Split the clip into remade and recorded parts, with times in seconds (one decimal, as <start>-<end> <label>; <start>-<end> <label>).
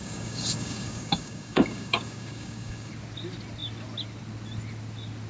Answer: 0.0-2.9 remade; 2.9-5.3 recorded